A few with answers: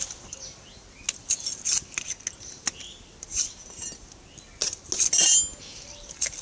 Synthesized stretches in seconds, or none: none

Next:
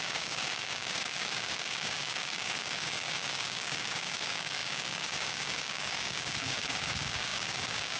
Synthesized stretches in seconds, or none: 0.0-8.0 (codec, DAC)

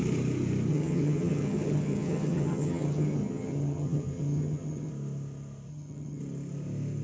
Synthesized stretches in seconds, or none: 0.7-4.9 (vocoder, HiFi-GAN); 5.7-6.2

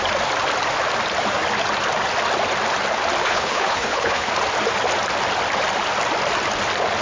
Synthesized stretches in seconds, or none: 3.2-4.3 (codec, HILCodec)

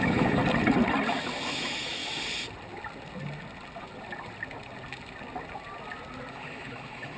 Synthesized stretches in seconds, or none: 0.0-0.4 (autoencoder, DAC-VAE); 1.5-2.0; 6.3-7.2

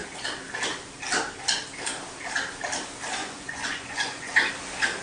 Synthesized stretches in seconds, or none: 3.2-4.5 (vocoder, Vocos)